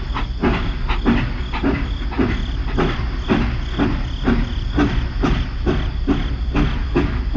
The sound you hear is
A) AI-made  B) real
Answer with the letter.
B